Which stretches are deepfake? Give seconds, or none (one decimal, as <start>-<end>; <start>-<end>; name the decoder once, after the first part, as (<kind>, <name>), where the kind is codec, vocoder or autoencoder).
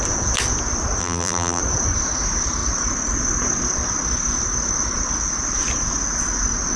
1.0-1.6 (vocoder, BigVGAN v2)